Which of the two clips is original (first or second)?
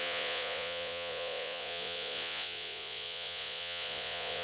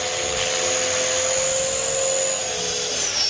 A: second